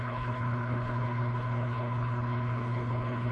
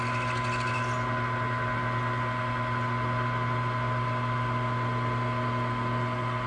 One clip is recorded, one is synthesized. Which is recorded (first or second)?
second